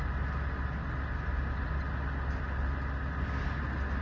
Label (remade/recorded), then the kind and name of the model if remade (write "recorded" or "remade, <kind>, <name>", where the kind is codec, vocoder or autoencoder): recorded